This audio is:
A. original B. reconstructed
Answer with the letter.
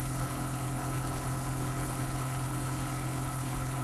B